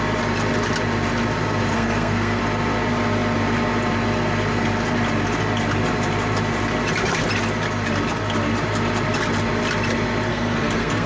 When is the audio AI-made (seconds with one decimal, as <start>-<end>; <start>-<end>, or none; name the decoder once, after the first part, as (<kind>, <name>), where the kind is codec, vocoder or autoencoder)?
1.7-2.4 (codec, SNAC); 10.3-11.1